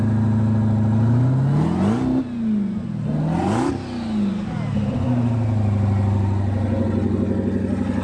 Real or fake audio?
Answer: real